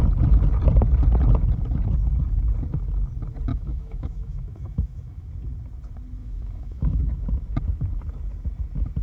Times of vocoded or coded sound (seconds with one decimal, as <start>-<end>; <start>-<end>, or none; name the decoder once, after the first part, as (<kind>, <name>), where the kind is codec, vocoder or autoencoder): 3.5-5.3 (autoencoder, DAC-VAE); 6.2-7.0